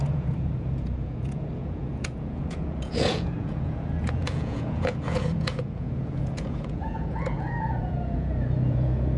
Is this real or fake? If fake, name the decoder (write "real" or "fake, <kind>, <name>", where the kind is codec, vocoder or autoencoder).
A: fake, vocoder, Vocos